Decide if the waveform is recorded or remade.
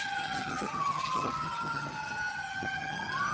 remade